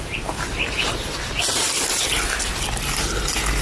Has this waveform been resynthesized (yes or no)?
no